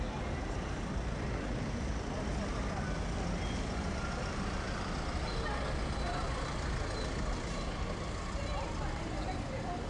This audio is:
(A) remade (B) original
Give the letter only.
B